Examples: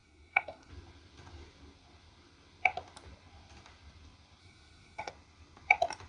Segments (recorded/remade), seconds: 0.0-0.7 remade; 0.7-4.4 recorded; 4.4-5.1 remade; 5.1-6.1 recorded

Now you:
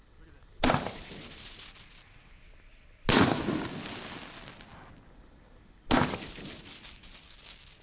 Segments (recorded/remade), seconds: 0.0-7.8 recorded

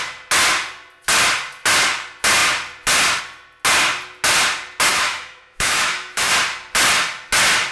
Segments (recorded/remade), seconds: 0.0-4.9 recorded; 4.9-6.3 remade; 6.3-7.7 recorded

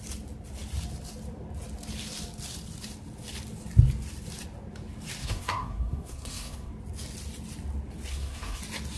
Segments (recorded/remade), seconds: 0.0-5.2 recorded; 5.2-6.7 remade; 6.7-8.1 recorded; 8.1-8.6 remade; 8.6-9.0 recorded